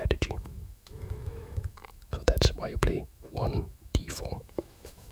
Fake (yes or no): yes